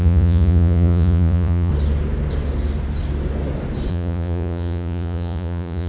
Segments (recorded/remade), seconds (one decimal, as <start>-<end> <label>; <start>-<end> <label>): 0.0-1.7 remade; 1.7-3.9 recorded; 3.9-5.9 remade

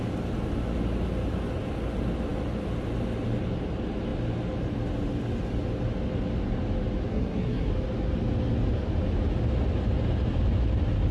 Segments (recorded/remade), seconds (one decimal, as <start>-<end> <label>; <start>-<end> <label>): 0.0-7.1 recorded; 7.1-7.7 remade; 7.7-11.1 recorded

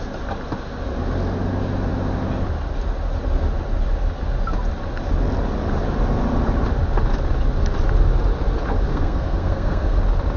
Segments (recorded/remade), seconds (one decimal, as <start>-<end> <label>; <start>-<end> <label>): 0.0-8.9 recorded; 8.9-10.0 remade; 10.0-10.4 recorded

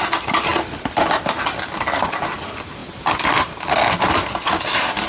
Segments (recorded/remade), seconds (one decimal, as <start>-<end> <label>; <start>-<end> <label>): 0.0-5.1 recorded

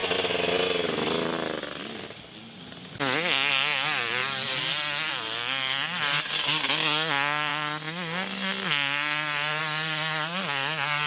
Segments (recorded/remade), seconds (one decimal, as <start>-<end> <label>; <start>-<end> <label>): 0.0-11.1 recorded

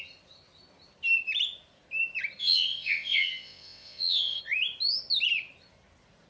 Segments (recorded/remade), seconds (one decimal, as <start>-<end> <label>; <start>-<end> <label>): 0.0-2.4 recorded; 2.4-4.4 remade; 4.4-6.3 recorded

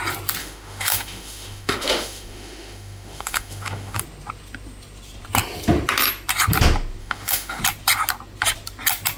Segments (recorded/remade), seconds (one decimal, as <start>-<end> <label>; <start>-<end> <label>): 0.0-0.4 recorded; 0.4-4.0 remade; 4.0-7.0 recorded; 7.0-7.6 remade; 7.6-9.2 recorded